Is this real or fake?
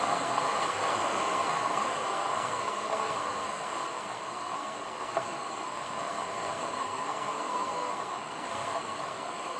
fake